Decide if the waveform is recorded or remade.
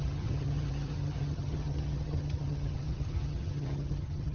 remade